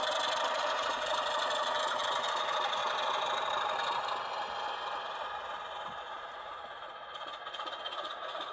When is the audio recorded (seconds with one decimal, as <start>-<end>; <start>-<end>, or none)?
0.0-0.5; 2.8-6.0